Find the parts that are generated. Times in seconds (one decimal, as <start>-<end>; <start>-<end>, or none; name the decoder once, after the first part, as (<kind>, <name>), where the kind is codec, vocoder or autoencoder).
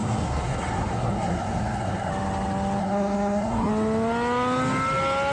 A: 0.0-2.1 (codec, SNAC); 2.8-3.7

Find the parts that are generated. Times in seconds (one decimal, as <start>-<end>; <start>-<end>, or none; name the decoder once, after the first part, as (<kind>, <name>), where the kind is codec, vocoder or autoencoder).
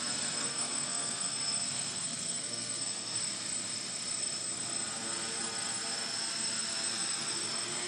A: 0.4-3.2 (codec, SNAC)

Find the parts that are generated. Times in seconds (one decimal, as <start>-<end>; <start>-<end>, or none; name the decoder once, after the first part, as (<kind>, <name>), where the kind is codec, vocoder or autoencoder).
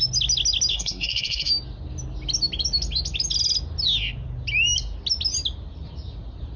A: 0.7-1.5 (codec, SNAC)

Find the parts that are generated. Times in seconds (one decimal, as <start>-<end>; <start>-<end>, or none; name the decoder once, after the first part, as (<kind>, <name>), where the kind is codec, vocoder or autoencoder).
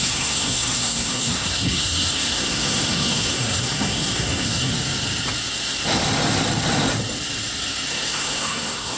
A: 0.0-4.7 (codec, SNAC); 7.9-9.0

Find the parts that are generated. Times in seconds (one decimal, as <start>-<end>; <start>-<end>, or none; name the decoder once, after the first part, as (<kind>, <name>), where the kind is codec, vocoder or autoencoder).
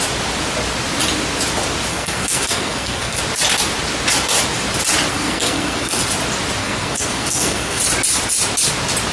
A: 1.9-3.2 (codec, SNAC); 5.1-6.0; 6.6-7.8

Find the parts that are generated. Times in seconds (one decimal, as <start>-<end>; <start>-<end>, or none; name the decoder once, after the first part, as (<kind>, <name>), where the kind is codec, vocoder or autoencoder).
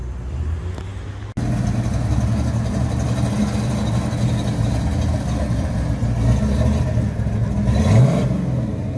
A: none